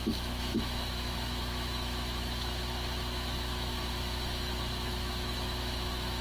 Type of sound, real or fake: fake